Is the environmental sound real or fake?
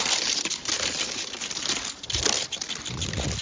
real